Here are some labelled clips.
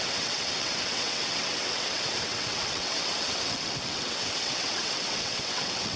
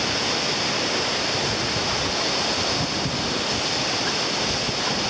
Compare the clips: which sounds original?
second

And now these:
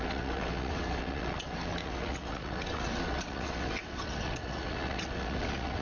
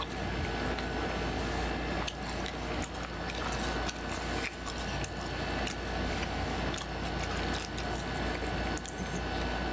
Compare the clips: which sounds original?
second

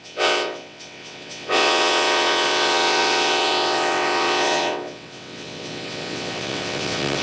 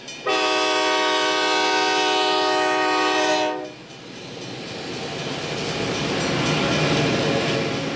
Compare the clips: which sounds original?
second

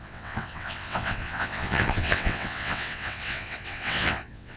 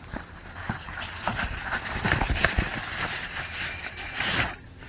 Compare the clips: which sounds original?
second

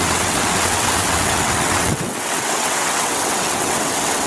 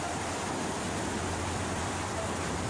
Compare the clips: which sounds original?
second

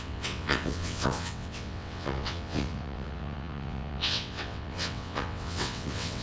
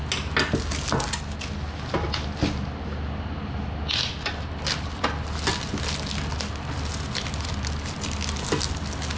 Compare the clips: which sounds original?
second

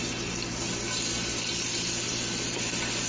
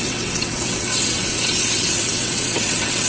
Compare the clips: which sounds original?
first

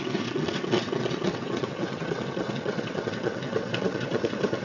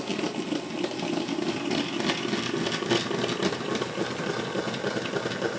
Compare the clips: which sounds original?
second